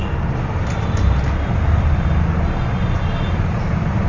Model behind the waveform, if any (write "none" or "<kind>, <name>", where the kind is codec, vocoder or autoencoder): none